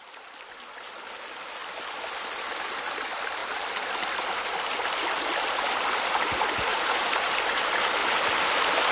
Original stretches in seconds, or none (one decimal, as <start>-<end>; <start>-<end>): 0.0-6.7; 7.3-8.9